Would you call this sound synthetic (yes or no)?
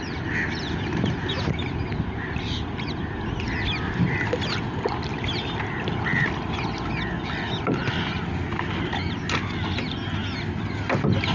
no